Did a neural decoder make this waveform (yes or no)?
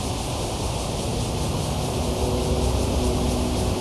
no